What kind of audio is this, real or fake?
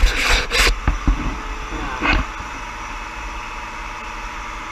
real